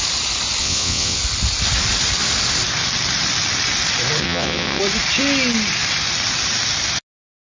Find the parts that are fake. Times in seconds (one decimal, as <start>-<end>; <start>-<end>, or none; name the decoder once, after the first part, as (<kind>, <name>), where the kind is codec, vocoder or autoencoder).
0.6-1.2 (vocoder, WaveNeXt); 4.2-4.8